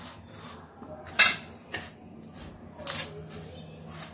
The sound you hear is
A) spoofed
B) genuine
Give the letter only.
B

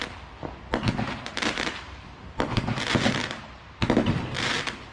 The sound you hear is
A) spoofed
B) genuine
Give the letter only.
B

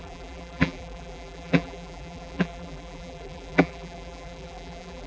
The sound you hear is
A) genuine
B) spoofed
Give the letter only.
B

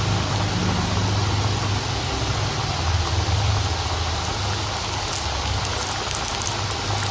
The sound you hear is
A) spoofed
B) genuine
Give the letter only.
B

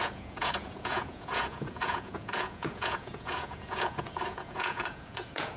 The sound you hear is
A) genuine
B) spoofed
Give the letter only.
B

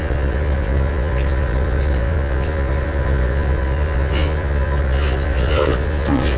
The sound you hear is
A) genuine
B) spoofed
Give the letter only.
B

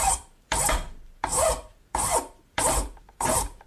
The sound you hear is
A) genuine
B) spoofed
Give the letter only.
B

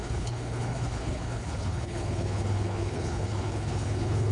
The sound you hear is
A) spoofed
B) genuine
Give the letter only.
A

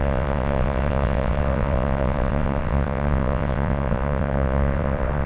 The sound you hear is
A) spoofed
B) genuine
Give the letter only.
A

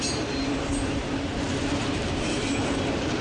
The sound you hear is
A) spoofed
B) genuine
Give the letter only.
A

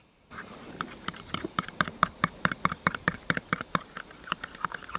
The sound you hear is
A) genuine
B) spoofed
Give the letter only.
B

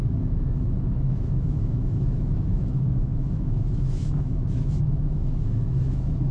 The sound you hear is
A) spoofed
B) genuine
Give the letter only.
A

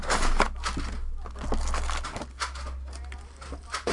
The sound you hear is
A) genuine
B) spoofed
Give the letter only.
A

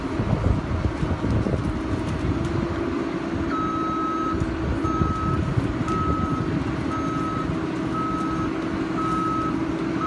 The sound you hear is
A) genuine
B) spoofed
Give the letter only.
A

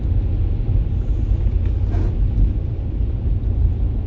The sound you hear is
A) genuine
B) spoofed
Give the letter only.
A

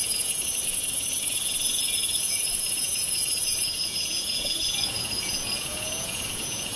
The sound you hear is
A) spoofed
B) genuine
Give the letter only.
A